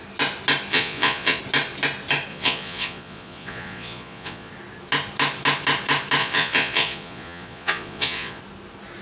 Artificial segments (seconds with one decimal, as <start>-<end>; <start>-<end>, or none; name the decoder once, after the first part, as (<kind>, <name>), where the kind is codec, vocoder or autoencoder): 0.7-1.4 (vocoder, Vocos); 2.3-4.5; 6.2-8.4